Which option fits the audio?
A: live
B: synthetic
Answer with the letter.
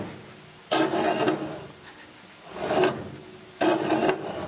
A